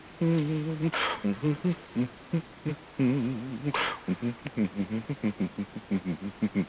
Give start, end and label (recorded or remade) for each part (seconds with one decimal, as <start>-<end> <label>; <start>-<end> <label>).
0.0-1.1 recorded; 1.1-2.7 remade; 2.7-6.7 recorded